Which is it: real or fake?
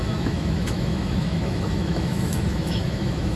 fake